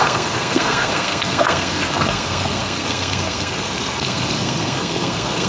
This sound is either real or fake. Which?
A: fake